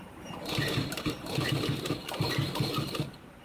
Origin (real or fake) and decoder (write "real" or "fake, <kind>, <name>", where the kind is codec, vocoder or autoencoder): fake, vocoder, BigVGAN v2